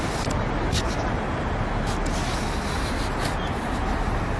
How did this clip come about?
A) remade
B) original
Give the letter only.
B